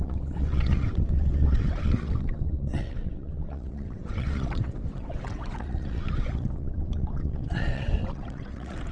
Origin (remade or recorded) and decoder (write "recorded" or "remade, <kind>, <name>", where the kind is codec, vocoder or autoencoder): remade, vocoder, WaveNeXt